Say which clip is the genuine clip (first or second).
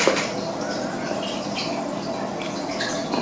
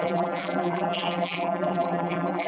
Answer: first